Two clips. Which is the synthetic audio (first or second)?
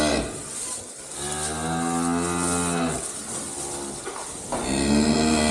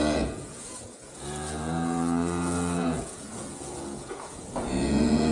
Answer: second